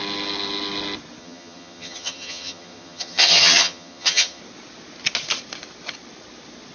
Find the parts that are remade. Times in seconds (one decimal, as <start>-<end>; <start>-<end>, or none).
1.2-4.4